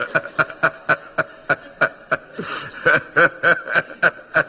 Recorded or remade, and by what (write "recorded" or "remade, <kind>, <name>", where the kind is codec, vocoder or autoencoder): recorded